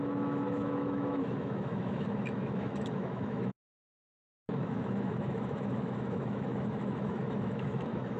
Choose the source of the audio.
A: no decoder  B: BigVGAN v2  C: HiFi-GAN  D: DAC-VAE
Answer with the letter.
D